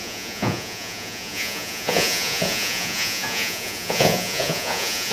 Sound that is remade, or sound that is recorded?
remade